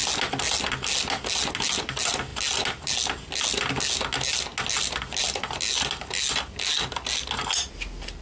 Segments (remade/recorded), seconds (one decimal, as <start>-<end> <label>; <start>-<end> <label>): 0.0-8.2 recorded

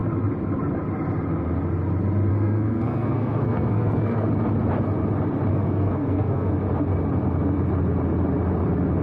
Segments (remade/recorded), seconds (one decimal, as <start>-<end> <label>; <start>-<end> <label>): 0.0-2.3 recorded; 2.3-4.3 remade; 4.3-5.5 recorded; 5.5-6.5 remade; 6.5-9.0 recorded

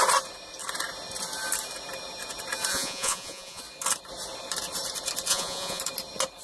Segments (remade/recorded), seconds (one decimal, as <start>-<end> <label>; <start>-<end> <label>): 0.0-2.7 recorded; 2.7-3.6 remade; 3.6-5.3 recorded; 5.3-5.8 remade; 5.8-6.4 recorded

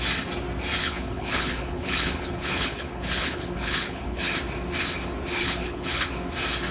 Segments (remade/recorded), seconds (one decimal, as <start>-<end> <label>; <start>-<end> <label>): 0.0-0.8 recorded; 0.8-4.3 remade; 4.3-5.4 recorded; 5.4-6.1 remade; 6.1-6.7 recorded